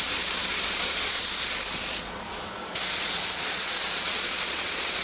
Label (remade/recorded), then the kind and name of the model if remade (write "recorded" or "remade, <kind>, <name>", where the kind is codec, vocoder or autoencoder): remade, vocoder, Vocos